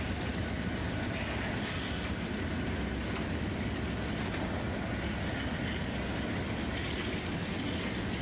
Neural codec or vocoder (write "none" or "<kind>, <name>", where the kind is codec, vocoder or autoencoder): none